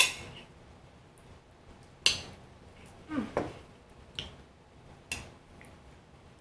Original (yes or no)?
yes